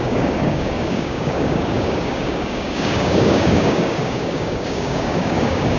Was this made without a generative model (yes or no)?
no